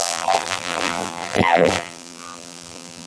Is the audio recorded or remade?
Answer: remade